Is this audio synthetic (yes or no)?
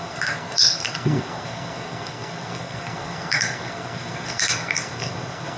yes